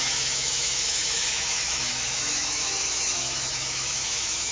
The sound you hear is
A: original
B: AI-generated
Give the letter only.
B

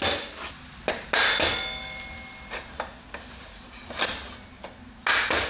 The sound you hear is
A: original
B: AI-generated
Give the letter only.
A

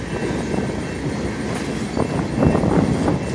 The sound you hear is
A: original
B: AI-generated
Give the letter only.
A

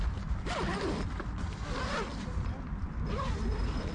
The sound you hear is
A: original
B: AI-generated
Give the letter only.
A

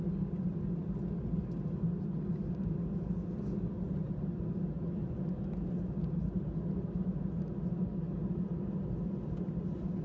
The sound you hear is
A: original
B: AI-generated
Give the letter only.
A